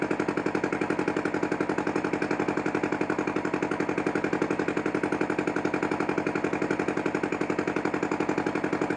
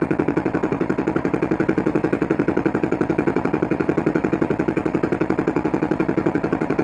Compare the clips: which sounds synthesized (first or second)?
second